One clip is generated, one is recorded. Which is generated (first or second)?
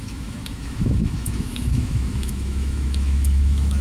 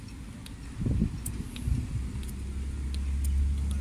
first